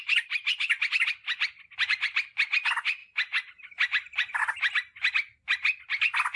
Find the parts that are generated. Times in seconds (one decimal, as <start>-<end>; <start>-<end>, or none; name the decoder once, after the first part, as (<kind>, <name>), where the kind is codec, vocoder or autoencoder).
none